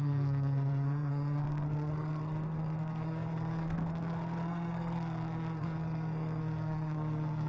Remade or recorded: remade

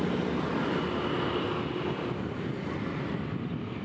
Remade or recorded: recorded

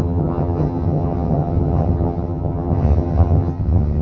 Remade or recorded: remade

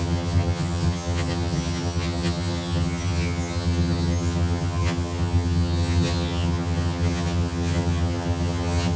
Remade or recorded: remade